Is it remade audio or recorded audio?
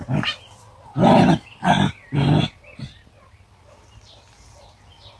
recorded